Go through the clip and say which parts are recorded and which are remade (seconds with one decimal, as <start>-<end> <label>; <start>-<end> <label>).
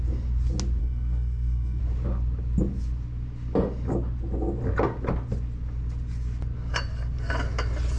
0.0-0.8 recorded; 0.8-1.8 remade; 1.8-8.0 recorded